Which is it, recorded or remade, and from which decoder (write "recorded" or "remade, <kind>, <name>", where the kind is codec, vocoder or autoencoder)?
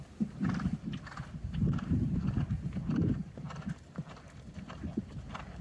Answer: recorded